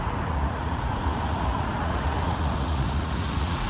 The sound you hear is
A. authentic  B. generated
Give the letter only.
B